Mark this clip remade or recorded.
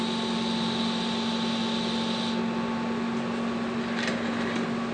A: recorded